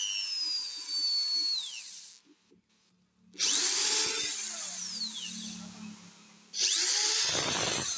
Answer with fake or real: real